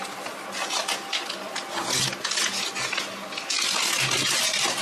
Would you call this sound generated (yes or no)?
no